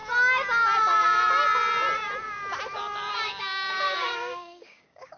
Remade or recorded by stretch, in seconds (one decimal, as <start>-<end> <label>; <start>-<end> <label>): 0.0-3.1 recorded; 3.1-5.2 remade